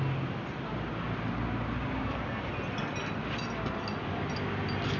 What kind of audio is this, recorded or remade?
recorded